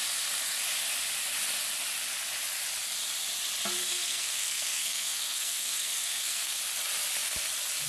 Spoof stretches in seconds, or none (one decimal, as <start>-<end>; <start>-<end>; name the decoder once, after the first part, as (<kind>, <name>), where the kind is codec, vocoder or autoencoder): 3.8-6.6 (codec, SNAC)